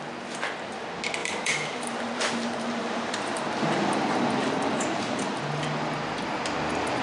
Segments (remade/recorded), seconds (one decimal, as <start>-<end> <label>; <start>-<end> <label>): 0.0-1.2 recorded; 1.2-5.4 remade; 5.4-7.0 recorded